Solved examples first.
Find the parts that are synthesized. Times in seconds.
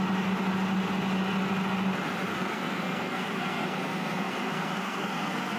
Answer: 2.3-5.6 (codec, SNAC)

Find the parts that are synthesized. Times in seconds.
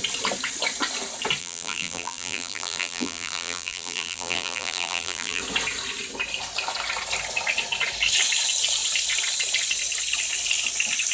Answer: 1.4-5.4 (vocoder, BigVGAN v2)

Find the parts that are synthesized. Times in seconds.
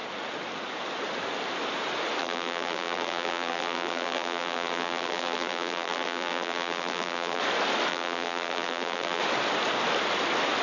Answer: 2.2-7.4 (vocoder, BigVGAN v2); 7.9-9.2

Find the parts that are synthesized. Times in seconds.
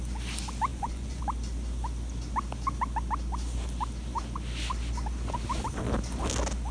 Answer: 0.7-1.2 (vocoder, Vocos)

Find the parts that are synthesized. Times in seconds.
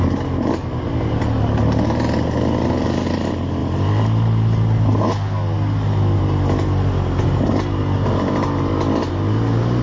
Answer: none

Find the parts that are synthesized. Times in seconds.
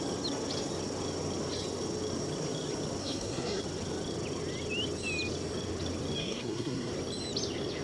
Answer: 3.0-3.6 (codec, SNAC); 6.2-6.9